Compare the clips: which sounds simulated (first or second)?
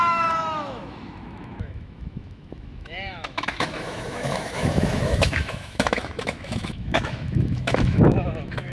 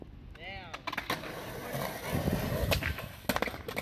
first